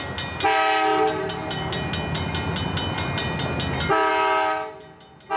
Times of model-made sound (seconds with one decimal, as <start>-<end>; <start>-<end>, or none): none